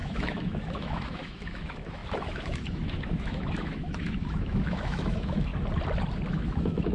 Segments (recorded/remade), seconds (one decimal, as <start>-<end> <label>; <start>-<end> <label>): 0.0-5.5 remade; 5.5-6.3 recorded; 6.3-6.9 remade